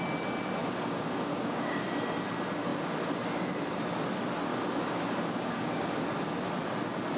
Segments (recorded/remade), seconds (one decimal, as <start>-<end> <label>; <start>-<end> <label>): 0.0-0.6 recorded; 0.6-1.9 remade; 1.9-4.5 recorded; 4.5-5.7 remade; 5.7-7.2 recorded